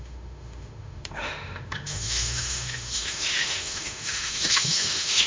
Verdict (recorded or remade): remade